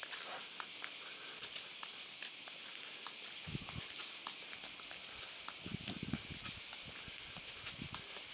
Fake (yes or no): no